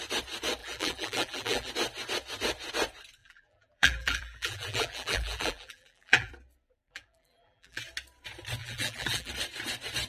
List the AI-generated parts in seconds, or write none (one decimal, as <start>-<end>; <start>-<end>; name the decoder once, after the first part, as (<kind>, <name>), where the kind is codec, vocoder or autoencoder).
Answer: 0.6-1.7 (vocoder, BigVGAN v2); 3.2-6.3; 6.8-7.8; 8.6-9.3